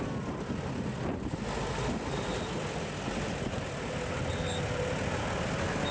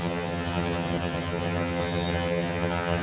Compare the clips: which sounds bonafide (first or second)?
first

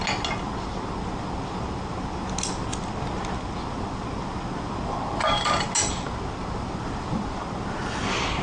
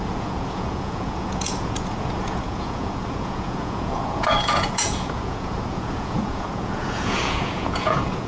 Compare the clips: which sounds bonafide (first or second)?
first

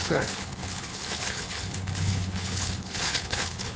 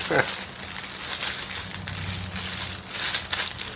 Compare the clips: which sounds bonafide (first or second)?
second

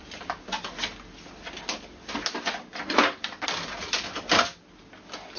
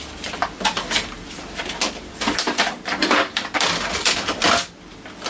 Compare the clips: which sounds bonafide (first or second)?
first